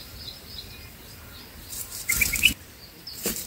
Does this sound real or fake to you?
fake